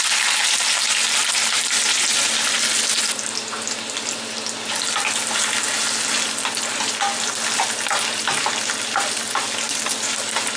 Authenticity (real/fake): real